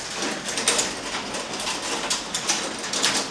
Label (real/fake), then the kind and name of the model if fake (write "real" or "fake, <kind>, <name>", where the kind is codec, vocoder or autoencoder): real